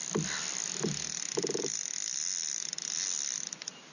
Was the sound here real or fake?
real